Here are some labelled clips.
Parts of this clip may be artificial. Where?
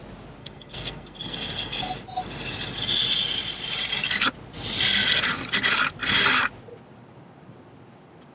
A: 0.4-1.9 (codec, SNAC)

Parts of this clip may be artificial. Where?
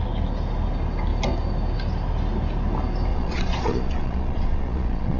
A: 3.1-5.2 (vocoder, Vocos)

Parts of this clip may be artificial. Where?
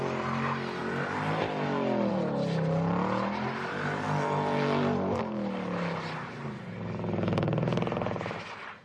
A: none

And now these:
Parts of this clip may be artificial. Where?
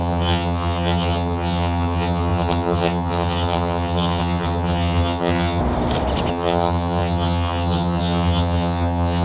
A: 0.0-5.6 (vocoder, HiFi-GAN); 6.3-9.2